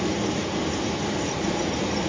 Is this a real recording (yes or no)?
yes